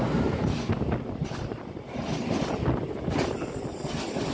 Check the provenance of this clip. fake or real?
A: real